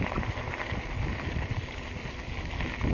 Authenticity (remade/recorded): recorded